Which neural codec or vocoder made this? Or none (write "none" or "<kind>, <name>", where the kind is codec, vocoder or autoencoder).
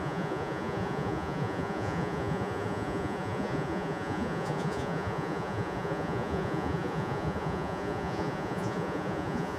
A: vocoder, Vocos